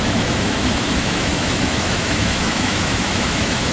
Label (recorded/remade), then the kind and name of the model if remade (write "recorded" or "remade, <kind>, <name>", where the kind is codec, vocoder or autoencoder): remade, autoencoder, DAC-VAE